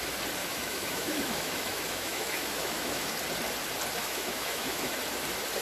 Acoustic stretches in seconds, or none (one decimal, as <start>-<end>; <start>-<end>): 0.0-0.4; 3.1-4.0; 4.9-5.6